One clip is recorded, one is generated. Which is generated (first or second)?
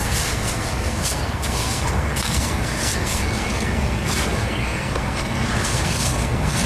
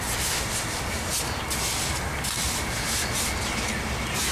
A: first